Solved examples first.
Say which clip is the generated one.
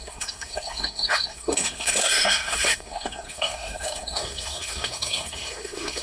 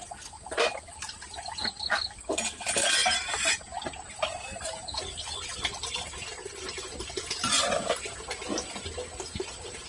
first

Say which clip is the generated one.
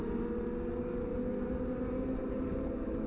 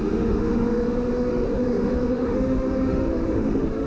second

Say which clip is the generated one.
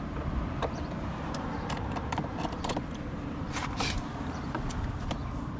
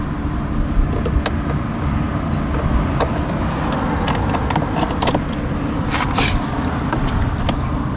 first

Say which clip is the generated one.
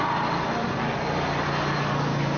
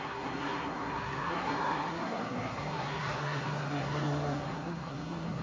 second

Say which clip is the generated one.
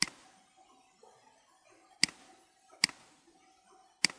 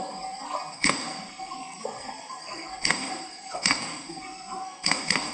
second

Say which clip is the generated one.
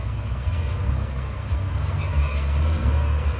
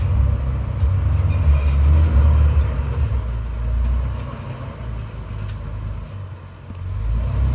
first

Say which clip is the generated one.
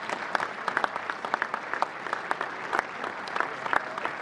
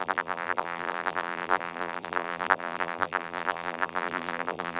second